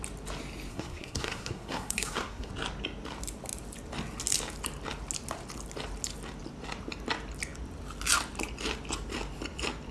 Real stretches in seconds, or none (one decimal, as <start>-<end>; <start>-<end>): 0.0-0.7; 2.5-9.9